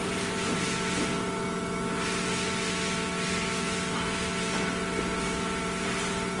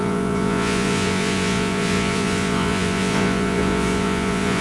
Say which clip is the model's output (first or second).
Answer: second